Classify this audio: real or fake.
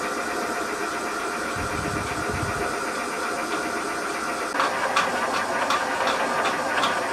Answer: real